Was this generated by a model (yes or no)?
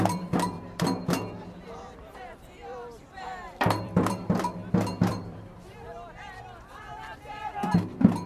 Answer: yes